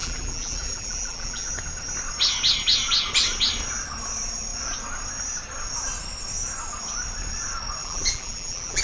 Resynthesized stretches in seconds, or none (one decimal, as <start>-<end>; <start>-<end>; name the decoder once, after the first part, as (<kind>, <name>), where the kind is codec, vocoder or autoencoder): 0.0-1.5 (vocoder, BigVGAN v2); 7.8-8.8